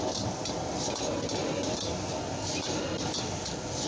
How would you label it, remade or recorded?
recorded